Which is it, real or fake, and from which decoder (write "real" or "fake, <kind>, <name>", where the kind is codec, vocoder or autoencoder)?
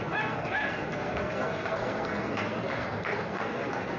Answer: fake, codec, SNAC